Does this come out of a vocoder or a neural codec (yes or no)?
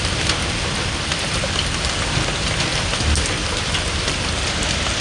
no